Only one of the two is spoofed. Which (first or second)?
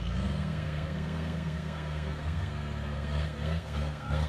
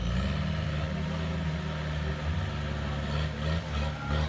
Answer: first